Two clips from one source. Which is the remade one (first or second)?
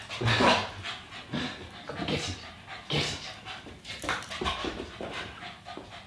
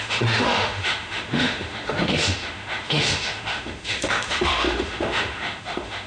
second